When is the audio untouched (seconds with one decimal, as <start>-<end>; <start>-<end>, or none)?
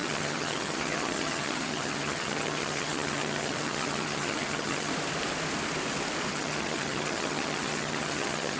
4.9-6.3